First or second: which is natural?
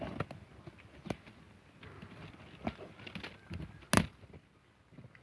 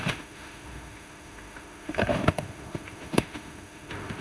first